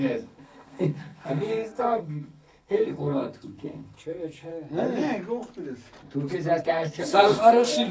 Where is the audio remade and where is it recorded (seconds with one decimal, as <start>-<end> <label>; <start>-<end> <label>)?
0.0-4.5 remade; 4.5-6.6 recorded; 6.6-7.9 remade

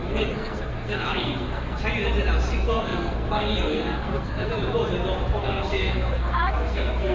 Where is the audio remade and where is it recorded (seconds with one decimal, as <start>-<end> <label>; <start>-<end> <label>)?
0.0-1.8 remade; 1.8-2.5 recorded; 2.5-4.5 remade; 4.5-5.4 recorded; 5.4-7.1 remade

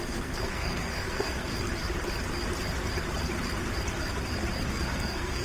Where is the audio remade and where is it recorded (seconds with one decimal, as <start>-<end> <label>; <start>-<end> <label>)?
0.0-1.5 remade; 1.5-4.7 recorded; 4.7-5.4 remade

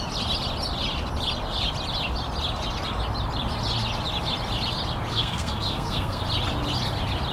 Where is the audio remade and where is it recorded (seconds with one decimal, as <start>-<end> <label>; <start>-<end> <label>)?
0.0-5.1 recorded; 5.1-6.2 remade; 6.2-7.3 recorded

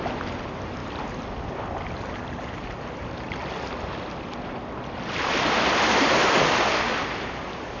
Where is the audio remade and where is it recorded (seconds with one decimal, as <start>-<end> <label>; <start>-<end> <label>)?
0.0-7.8 recorded

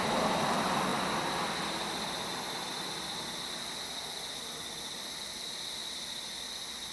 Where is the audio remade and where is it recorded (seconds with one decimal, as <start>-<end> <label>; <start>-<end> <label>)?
0.0-6.9 recorded

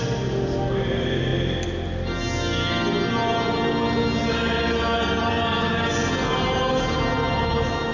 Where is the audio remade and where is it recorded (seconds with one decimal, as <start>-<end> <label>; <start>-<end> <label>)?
0.0-7.9 recorded

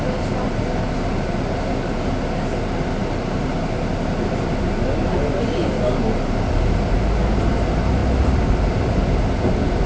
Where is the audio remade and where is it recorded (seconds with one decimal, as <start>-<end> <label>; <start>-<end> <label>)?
0.0-9.9 recorded